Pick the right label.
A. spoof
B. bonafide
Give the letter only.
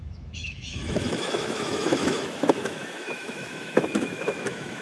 A